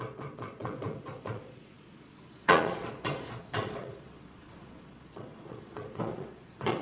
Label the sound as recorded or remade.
remade